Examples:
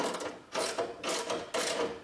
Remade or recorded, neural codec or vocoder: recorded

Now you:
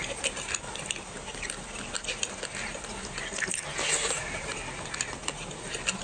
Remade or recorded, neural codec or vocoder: recorded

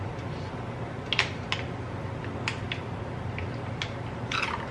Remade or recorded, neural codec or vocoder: recorded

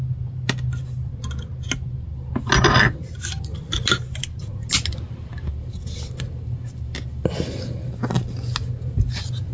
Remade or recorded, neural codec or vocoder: recorded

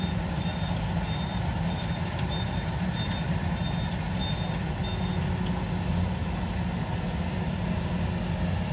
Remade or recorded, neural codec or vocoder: recorded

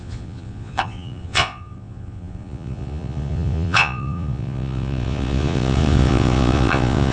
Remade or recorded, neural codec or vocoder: remade, vocoder, Vocos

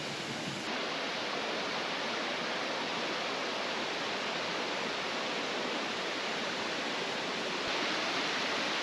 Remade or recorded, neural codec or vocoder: recorded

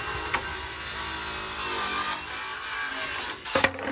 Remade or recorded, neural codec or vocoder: recorded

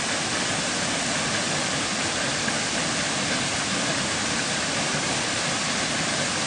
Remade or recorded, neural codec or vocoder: recorded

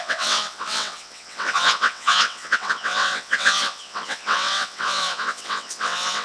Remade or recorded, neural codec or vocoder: remade, vocoder, WaveNeXt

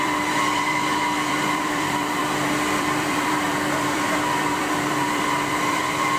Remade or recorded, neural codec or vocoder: remade, vocoder, BigVGAN v2